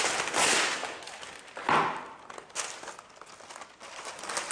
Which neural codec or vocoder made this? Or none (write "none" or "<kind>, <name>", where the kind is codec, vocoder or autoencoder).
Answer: none